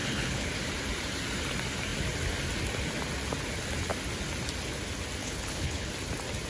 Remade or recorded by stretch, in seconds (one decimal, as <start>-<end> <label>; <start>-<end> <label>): 0.0-0.5 remade; 0.5-5.2 recorded; 5.2-5.9 remade; 5.9-6.5 recorded

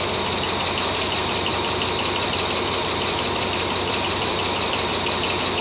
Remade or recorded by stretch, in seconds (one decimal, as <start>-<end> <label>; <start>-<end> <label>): 0.0-1.5 recorded; 1.5-4.9 remade; 4.9-5.6 recorded